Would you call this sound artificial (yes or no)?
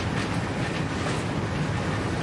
no